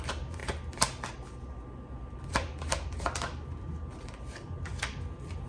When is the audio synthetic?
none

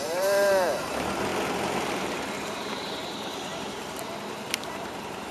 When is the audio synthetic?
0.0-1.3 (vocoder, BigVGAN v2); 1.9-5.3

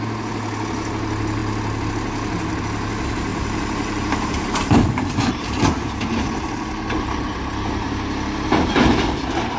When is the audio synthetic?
3.3-5.6 (vocoder, BigVGAN v2)